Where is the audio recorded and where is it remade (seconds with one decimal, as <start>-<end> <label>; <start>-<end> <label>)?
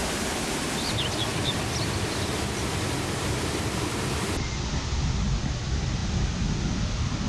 0.0-1.3 recorded; 1.3-4.3 remade; 4.3-7.3 recorded